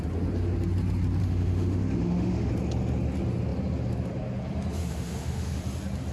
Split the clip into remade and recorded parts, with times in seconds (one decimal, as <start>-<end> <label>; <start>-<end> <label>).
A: 0.0-1.2 recorded; 1.2-2.5 remade; 2.5-4.8 recorded; 4.8-5.6 remade; 5.6-6.1 recorded